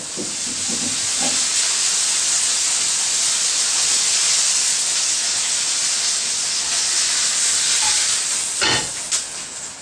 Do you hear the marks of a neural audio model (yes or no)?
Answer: no